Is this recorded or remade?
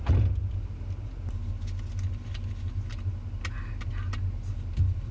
recorded